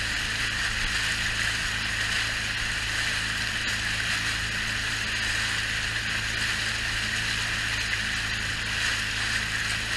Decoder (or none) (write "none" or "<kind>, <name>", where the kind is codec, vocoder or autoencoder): none